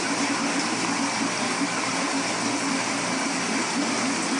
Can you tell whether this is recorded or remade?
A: recorded